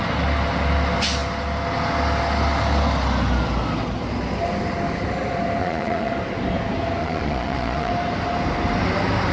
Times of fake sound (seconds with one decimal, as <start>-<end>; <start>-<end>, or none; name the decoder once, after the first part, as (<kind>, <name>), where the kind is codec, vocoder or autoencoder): 5.6-6.1 (vocoder, Vocos); 7.0-7.9